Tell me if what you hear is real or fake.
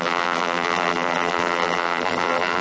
fake